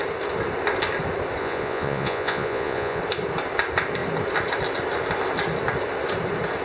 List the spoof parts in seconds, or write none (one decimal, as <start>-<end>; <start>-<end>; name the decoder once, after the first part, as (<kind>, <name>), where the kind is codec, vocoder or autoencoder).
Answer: 1.4-3.0 (vocoder, Vocos)